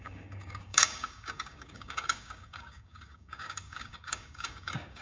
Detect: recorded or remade remade